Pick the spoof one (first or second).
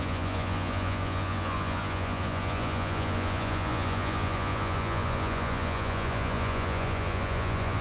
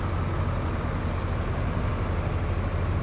first